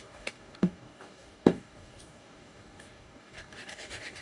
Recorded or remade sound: remade